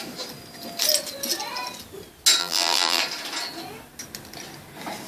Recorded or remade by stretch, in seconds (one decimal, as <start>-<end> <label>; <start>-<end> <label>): 0.0-2.4 recorded; 2.4-3.0 remade; 3.0-5.1 recorded